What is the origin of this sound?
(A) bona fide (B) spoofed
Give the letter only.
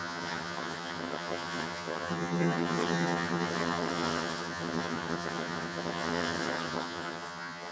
B